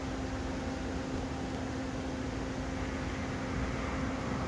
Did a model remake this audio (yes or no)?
no